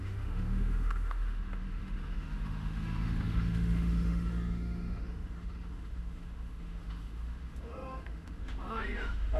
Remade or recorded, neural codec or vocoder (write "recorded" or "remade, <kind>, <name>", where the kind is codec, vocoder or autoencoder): remade, autoencoder, DAC-VAE